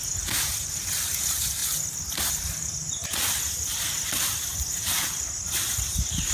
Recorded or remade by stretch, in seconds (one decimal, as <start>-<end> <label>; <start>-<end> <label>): 0.0-0.7 recorded; 0.7-1.6 remade; 1.6-2.3 recorded; 2.3-2.8 remade; 2.8-5.7 recorded; 5.7-6.3 remade